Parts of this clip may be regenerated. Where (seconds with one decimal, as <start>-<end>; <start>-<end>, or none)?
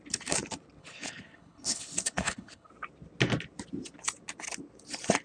0.8-2.7